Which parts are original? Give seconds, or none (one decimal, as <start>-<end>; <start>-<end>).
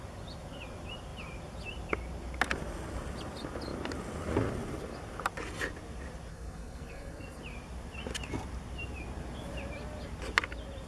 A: 0.0-6.3; 7.4-10.9